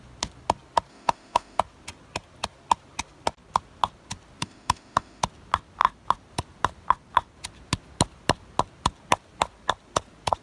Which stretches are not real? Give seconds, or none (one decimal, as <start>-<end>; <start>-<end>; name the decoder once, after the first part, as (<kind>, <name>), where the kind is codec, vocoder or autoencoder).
0.9-1.6 (autoencoder, DAC-VAE); 4.4-5.2